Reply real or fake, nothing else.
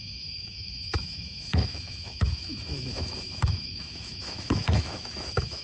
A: fake